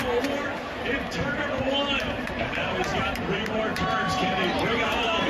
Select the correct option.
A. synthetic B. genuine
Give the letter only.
A